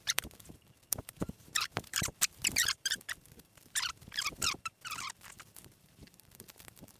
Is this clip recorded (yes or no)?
no